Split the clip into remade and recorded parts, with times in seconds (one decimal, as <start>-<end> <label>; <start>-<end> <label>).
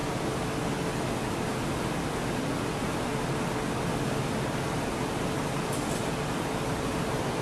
0.0-7.4 recorded